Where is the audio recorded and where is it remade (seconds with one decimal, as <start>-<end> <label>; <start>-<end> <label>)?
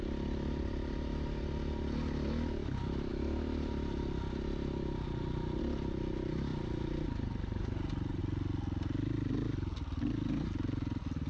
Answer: 0.0-11.3 recorded